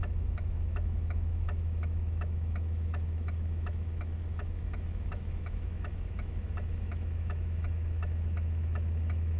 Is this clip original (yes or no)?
no